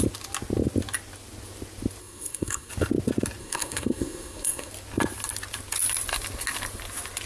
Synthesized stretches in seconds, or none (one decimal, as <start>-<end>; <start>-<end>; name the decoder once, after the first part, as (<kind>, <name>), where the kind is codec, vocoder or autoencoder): 2.0-2.7 (codec, SNAC); 3.4-4.7